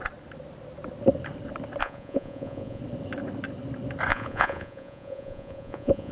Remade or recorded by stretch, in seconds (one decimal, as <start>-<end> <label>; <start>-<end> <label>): 0.0-1.8 recorded; 1.8-2.8 remade; 2.8-4.1 recorded; 4.1-6.1 remade